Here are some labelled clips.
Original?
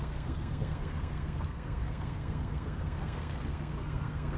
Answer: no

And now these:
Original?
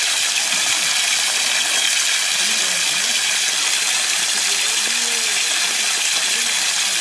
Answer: yes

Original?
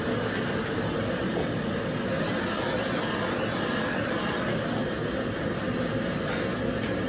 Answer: yes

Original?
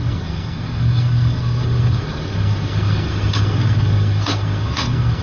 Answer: no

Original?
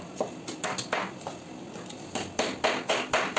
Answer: yes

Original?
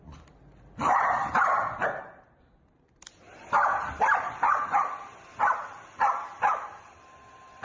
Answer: yes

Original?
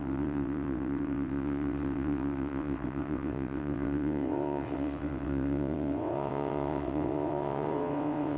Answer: no